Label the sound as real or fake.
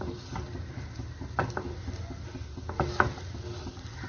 real